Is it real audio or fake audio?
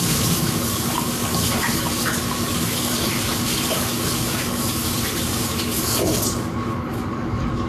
fake